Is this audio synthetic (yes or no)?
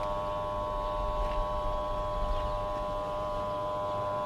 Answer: no